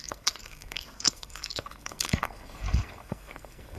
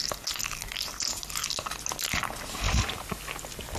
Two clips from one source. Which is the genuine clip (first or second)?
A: second